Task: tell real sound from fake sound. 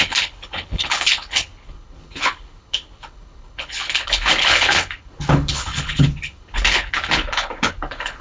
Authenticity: fake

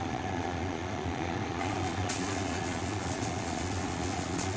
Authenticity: fake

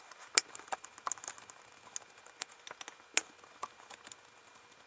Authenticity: real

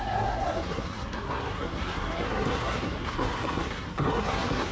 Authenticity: fake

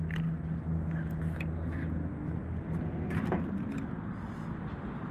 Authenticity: real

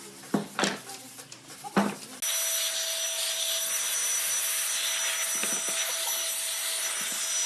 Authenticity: real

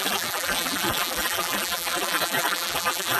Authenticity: fake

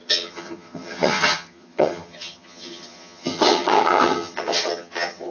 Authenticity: fake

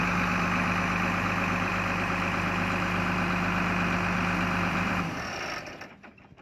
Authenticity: fake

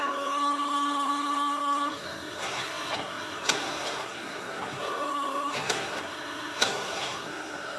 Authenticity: fake